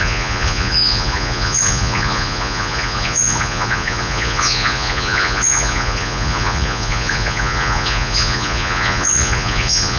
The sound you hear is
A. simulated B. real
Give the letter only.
A